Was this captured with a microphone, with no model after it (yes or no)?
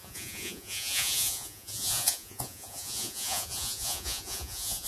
no